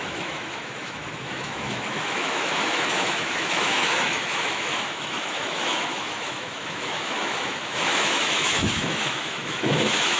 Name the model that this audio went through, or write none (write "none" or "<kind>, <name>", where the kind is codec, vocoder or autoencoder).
autoencoder, DAC-VAE